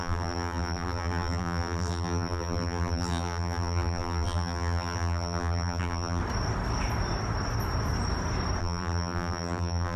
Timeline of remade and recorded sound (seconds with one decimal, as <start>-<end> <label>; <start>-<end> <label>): 0.0-6.2 remade; 6.2-8.6 recorded; 8.6-10.0 remade